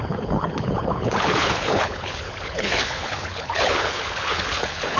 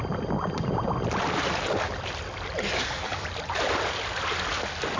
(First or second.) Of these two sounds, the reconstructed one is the first